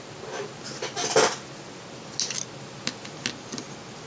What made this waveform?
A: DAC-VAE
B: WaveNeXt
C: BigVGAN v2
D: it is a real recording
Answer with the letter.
D